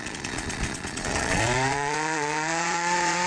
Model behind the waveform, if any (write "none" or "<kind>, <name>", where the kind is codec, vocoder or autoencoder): vocoder, Vocos